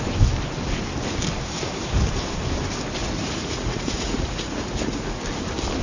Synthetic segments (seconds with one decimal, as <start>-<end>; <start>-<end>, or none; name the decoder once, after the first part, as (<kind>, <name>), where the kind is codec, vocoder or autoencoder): 3.0-5.2 (vocoder, Vocos)